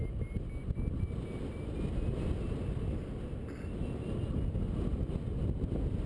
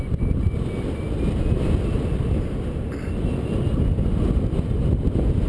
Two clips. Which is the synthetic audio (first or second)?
second